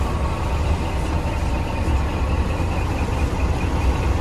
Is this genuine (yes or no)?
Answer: yes